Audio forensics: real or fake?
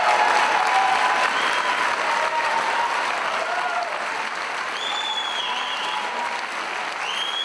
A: real